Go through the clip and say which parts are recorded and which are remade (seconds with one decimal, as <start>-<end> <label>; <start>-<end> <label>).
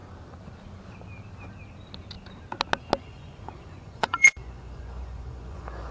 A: 0.0-3.0 recorded; 3.0-5.9 remade